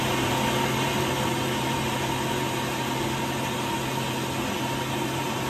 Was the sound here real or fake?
real